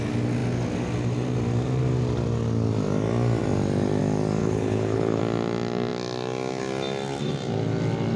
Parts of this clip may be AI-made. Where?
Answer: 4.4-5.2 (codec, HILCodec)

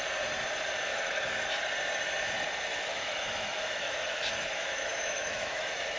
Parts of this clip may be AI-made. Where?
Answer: 0.9-1.6 (autoencoder, DAC-VAE); 2.7-6.0

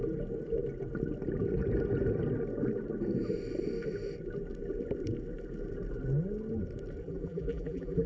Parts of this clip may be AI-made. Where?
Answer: 7.0-8.1 (vocoder, BigVGAN v2)

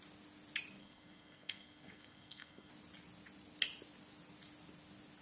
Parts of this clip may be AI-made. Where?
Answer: 0.8-2.7 (codec, SNAC)

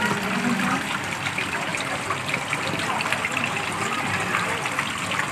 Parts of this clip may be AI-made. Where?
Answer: none

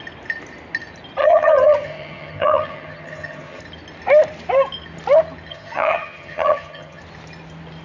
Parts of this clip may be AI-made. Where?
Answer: 1.2-3.6 (vocoder, HiFi-GAN); 5.5-7.0

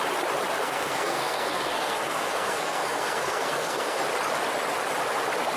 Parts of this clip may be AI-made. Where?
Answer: 0.6-4.0 (codec, SNAC)